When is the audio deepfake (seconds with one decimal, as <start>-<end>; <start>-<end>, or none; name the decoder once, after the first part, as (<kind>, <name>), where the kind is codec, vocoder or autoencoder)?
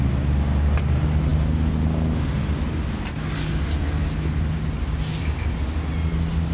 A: none